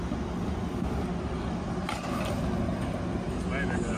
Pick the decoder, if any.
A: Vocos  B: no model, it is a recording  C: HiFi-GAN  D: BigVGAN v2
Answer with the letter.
B